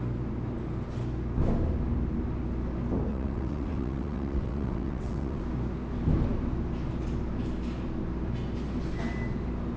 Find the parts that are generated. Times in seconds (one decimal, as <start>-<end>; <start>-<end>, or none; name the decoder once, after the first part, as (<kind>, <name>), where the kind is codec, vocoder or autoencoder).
3.1-5.4 (vocoder, WaveNeXt)

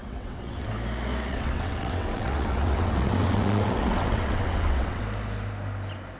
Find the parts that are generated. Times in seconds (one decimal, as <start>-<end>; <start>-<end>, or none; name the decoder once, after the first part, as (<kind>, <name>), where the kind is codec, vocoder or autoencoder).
0.0-0.7 (vocoder, WaveNeXt); 1.3-5.0

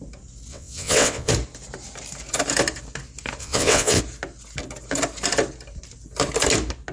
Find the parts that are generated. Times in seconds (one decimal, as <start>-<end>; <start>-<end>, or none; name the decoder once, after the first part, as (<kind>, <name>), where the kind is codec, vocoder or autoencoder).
0.5-1.3 (vocoder, WaveNeXt); 3.4-4.0